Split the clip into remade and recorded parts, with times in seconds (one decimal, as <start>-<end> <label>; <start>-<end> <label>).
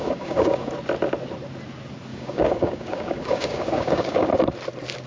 0.0-0.7 remade; 0.7-2.1 recorded; 2.1-4.3 remade; 4.3-5.1 recorded